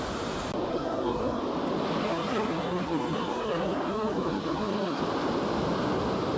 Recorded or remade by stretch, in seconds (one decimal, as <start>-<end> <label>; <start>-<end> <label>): 0.0-0.7 recorded; 0.7-1.4 remade; 1.4-2.0 recorded; 2.0-5.0 remade; 5.0-6.4 recorded